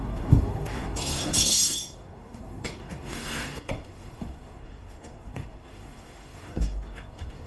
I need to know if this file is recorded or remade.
remade